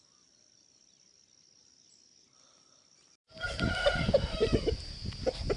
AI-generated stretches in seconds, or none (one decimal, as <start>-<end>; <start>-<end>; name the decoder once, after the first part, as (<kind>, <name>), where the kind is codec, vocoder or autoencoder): none

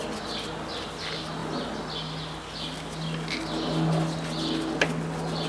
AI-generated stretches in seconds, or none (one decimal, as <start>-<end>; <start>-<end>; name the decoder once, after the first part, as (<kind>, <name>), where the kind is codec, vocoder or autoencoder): none

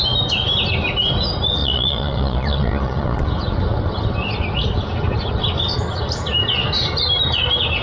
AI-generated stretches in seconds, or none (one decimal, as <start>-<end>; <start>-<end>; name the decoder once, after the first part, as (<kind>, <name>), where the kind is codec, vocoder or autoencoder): 1.6-3.3 (vocoder, Vocos)

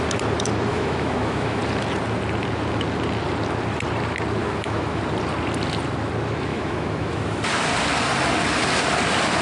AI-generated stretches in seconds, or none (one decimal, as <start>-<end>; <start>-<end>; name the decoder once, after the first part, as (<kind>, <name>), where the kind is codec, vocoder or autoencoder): 0.7-1.6 (autoencoder, DAC-VAE); 4.4-5.0; 6.5-7.4

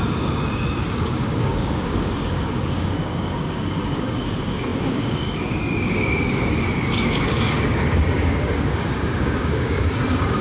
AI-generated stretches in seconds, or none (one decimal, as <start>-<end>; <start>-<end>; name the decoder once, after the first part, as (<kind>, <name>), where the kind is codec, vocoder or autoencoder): 0.0-10.4 (codec, DAC)

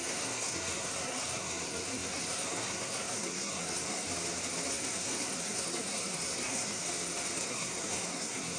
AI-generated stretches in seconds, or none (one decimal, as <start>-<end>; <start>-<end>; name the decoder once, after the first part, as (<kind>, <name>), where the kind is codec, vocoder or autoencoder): 0.0-4.1 (codec, SNAC); 4.7-6.8; 7.4-8.6

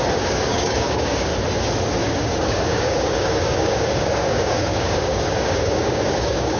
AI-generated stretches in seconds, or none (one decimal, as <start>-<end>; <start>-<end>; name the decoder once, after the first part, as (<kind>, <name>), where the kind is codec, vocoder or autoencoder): 0.0-1.3 (codec, DAC); 2.0-6.6

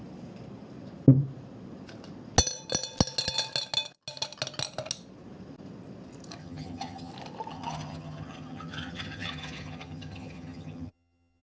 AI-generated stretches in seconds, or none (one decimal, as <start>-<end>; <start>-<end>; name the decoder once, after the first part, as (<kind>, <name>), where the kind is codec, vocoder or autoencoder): 6.4-7.1 (vocoder, HiFi-GAN); 7.5-11.4